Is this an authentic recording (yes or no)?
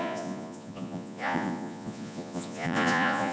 no